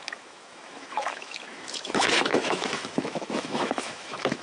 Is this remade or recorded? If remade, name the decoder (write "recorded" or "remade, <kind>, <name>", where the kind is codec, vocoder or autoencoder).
remade, autoencoder, DAC-VAE